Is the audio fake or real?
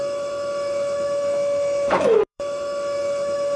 fake